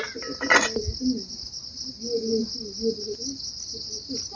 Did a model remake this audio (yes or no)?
no